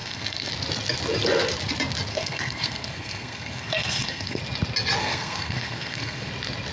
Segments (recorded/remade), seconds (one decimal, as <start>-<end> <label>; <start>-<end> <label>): 0.0-0.5 remade; 0.5-2.1 recorded; 2.1-4.4 remade; 4.4-5.0 recorded; 5.0-6.3 remade; 6.3-6.7 recorded